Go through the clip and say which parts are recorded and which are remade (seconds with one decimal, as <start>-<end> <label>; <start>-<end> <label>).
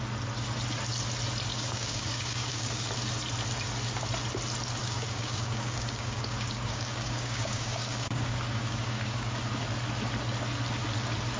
0.0-1.5 recorded; 1.5-2.9 remade; 2.9-4.8 recorded; 4.8-9.4 remade; 9.4-11.4 recorded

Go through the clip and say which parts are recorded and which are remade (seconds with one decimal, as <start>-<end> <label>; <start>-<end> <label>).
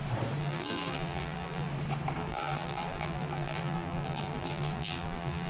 0.0-0.4 recorded; 0.4-1.7 remade; 1.7-2.2 recorded; 2.2-5.5 remade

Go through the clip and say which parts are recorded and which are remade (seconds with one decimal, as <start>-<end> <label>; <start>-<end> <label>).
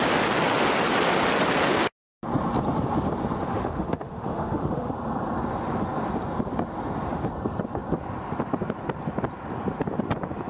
0.0-3.4 recorded; 3.4-4.9 remade; 4.9-10.5 recorded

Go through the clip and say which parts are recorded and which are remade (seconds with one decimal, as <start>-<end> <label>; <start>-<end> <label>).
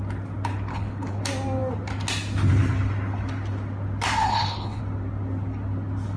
0.0-0.7 recorded; 0.7-1.2 remade; 1.2-4.2 recorded; 4.2-4.8 remade; 4.8-6.2 recorded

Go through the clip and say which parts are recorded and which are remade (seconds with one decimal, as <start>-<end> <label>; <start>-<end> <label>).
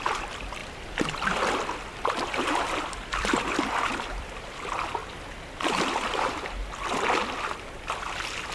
0.0-0.6 recorded; 0.6-1.5 remade; 1.5-1.9 recorded; 1.9-4.5 remade; 4.5-5.0 recorded; 5.0-6.3 remade; 6.3-8.5 recorded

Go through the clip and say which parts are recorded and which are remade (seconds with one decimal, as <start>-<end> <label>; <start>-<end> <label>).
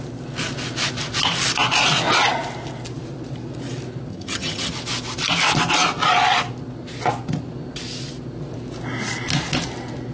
0.0-4.1 recorded; 4.1-4.7 remade; 4.7-10.1 recorded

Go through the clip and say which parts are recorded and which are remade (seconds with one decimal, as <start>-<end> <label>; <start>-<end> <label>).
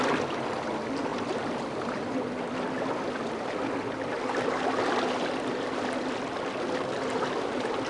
0.0-7.9 recorded